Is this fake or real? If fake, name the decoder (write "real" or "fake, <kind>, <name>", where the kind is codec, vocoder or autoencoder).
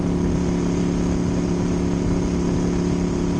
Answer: real